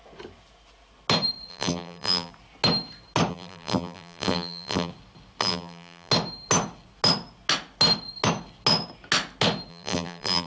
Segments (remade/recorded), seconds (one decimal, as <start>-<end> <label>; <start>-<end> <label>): 0.0-1.5 recorded; 1.5-2.3 remade; 2.3-3.3 recorded; 3.3-4.9 remade; 4.9-5.4 recorded; 5.4-6.1 remade; 6.1-9.7 recorded; 9.7-10.5 remade